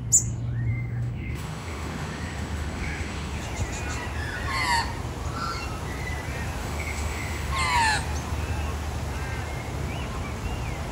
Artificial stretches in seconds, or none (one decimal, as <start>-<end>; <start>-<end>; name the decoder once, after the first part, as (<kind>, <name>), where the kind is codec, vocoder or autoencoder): 0.7-3.4 (autoencoder, DAC-VAE); 6.6-7.5